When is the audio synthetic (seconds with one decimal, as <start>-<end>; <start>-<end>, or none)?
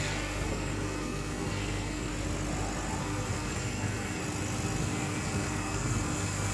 0.0-2.1; 3.0-4.2; 4.8-6.5